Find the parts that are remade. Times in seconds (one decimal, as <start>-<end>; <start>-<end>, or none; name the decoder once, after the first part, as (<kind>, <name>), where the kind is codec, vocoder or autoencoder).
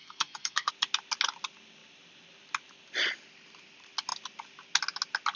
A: 0.0-0.7 (codec, SNAC)